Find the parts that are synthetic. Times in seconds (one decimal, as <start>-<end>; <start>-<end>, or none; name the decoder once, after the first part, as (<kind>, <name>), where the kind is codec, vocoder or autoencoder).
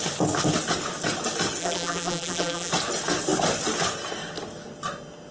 1.6-2.7 (vocoder, BigVGAN v2)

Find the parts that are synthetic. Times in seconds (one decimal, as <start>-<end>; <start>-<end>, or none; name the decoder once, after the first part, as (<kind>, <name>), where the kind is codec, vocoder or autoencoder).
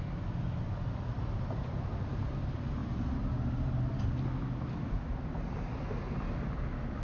none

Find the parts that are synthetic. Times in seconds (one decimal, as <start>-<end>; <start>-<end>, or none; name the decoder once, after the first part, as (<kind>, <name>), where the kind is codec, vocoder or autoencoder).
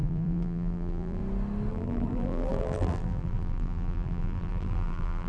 0.0-1.2 (vocoder, BigVGAN v2); 1.7-5.3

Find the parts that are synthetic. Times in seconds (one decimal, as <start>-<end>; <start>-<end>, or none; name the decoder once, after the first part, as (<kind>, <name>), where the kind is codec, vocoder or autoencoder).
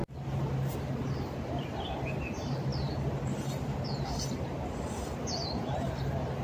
1.1-2.7 (vocoder, BigVGAN v2); 4.9-6.4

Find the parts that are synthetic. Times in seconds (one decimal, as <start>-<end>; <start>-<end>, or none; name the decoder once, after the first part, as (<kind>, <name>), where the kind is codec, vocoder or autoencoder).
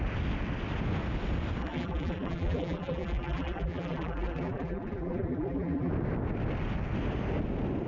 1.6-5.9 (vocoder, BigVGAN v2)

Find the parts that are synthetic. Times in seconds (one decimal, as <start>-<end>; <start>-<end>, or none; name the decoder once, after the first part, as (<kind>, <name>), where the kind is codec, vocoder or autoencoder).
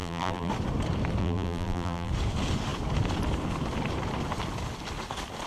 0.0-0.5 (vocoder, BigVGAN v2); 1.2-2.1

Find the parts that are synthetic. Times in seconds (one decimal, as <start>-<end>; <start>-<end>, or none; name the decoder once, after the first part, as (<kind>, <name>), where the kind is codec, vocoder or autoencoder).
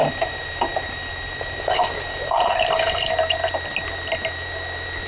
0.0-3.1 (vocoder, BigVGAN v2)